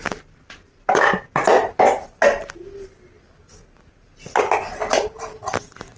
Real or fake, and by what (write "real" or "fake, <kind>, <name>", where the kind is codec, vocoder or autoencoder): real